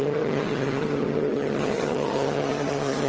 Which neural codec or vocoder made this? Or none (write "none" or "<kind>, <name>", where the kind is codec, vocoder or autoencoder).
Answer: vocoder, HiFi-GAN